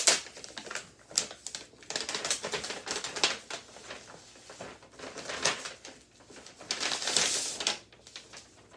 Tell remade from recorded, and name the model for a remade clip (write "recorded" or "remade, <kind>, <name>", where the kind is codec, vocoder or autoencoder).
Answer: recorded